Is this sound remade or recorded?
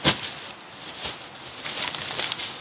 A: recorded